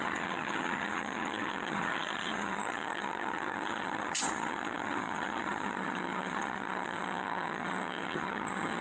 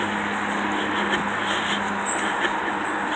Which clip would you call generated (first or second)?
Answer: first